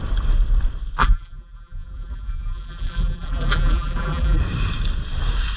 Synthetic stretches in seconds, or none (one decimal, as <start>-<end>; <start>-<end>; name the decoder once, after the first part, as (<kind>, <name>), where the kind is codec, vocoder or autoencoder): 1.0-4.4 (vocoder, BigVGAN v2)